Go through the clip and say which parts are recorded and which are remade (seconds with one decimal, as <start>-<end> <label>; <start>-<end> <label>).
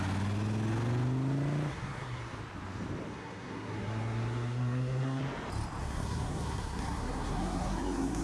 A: 0.0-1.7 recorded; 1.7-2.4 remade; 2.4-3.1 recorded; 3.1-5.2 remade; 5.2-5.8 recorded; 5.8-8.2 remade